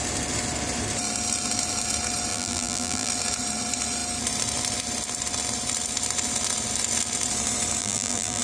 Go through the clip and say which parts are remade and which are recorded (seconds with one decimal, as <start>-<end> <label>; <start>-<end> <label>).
0.0-2.3 recorded; 2.3-3.1 remade; 3.1-7.8 recorded; 7.8-8.4 remade